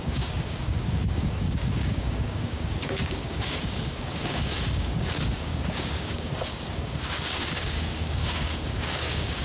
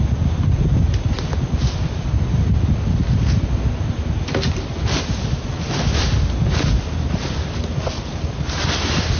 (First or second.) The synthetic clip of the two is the first